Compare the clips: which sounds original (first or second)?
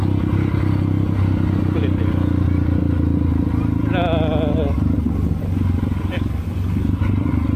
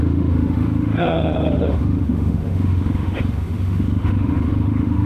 first